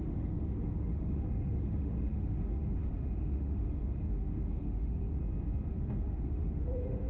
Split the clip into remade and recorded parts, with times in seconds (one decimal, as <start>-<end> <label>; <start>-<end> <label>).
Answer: 0.0-5.2 remade; 5.2-5.7 recorded; 5.7-7.1 remade